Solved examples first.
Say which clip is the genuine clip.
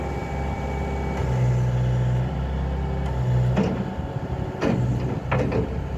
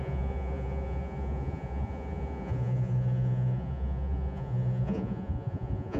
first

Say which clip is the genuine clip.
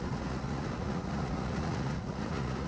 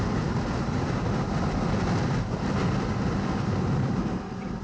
second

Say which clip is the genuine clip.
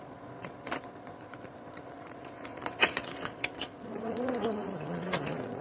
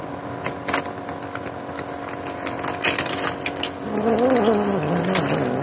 second